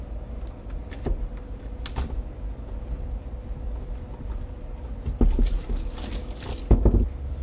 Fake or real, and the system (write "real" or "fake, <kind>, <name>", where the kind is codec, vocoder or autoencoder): real